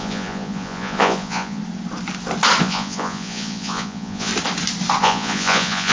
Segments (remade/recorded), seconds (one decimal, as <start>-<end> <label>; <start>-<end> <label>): 0.0-1.6 remade; 1.6-2.6 recorded; 2.6-4.3 remade; 4.3-5.0 recorded; 5.0-5.9 remade